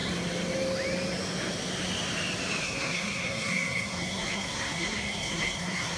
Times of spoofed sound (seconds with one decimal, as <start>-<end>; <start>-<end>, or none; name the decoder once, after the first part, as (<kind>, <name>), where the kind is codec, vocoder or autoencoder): 2.6-6.0 (codec, SNAC)